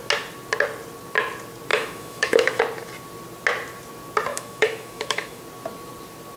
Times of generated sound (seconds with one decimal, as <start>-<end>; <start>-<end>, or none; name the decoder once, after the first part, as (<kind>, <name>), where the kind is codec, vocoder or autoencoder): 1.7-2.6 (autoencoder, DAC-VAE); 4.3-5.4